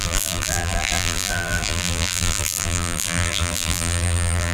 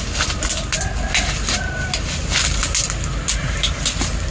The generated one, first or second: first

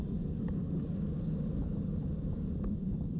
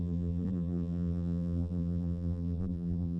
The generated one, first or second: second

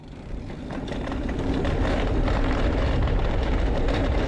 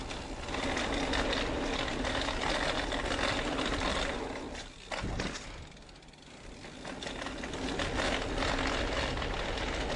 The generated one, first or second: first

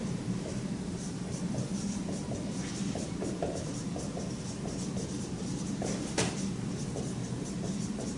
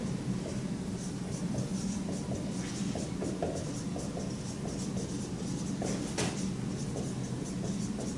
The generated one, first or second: first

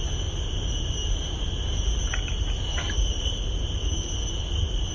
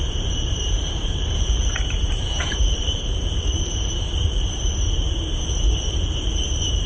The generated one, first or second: second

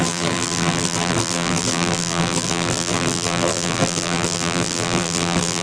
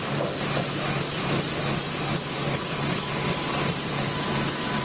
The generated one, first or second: first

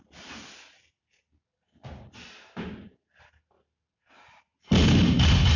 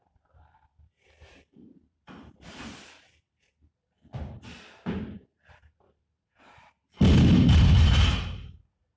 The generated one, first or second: second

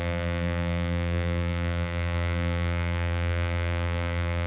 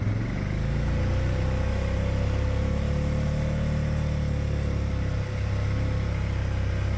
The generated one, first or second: first